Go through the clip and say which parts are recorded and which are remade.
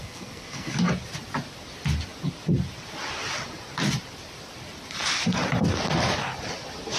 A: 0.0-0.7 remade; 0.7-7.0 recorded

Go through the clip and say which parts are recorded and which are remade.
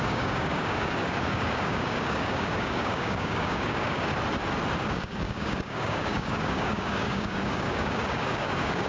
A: 0.0-4.1 remade; 4.1-4.8 recorded; 4.8-8.9 remade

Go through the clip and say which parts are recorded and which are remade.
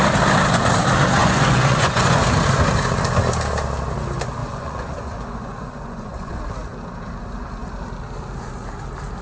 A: 0.0-1.2 recorded; 1.2-2.2 remade; 2.2-4.4 recorded; 4.4-6.4 remade; 6.4-9.2 recorded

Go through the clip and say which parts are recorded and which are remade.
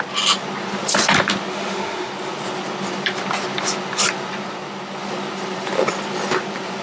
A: 0.0-1.5 recorded; 1.5-2.1 remade; 2.1-6.8 recorded